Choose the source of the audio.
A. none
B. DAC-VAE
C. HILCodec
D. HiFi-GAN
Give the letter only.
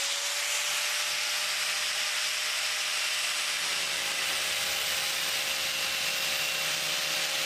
A